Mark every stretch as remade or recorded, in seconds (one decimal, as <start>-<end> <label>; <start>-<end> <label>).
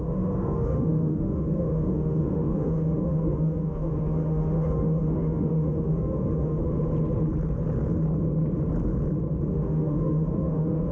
0.0-6.6 remade; 6.6-9.5 recorded; 9.5-10.9 remade